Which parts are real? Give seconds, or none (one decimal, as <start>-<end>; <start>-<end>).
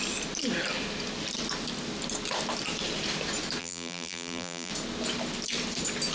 0.0-3.6; 4.7-6.1